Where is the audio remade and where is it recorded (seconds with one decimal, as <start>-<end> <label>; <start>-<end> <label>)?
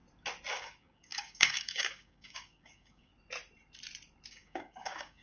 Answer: 0.0-0.5 recorded; 0.5-3.1 remade; 3.1-4.3 recorded; 4.3-5.2 remade